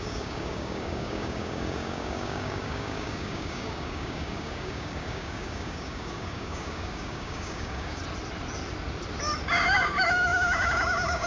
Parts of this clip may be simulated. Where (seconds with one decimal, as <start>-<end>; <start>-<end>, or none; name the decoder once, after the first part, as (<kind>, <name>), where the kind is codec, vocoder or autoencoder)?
0.0-8.0 (codec, DAC); 9.5-11.3